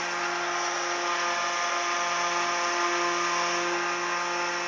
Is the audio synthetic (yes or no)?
no